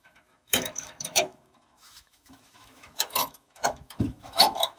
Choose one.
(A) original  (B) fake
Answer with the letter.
B